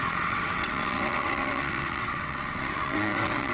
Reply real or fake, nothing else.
fake